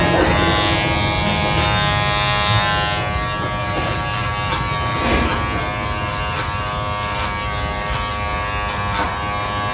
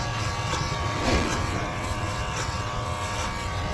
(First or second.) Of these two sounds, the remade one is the second